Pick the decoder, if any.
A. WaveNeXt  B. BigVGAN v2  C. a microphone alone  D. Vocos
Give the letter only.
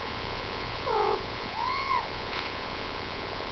D